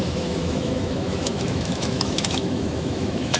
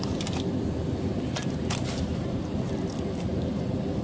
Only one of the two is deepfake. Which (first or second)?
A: first